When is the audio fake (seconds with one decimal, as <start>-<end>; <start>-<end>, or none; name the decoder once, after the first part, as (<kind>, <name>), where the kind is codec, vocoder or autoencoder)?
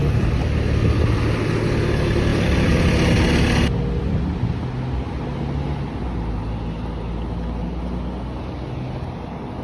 2.3-2.9 (vocoder, BigVGAN v2)